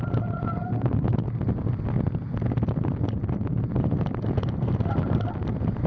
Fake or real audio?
real